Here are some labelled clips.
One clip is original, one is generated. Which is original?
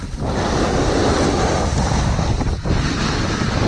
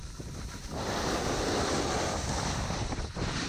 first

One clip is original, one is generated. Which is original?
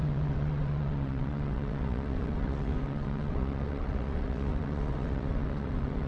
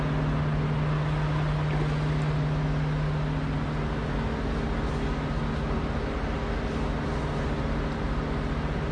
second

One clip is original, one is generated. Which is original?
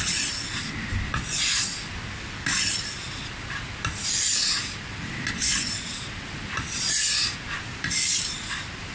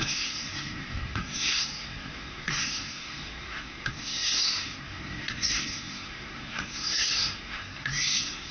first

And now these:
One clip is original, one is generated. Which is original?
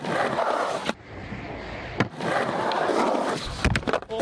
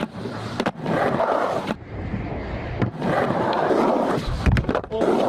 first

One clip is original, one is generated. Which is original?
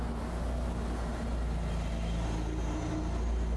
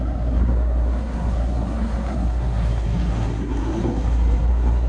first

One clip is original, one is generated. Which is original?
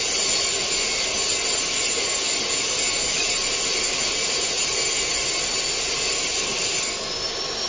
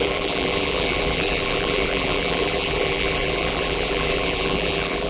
first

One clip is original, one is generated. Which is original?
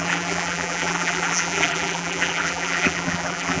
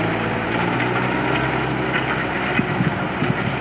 second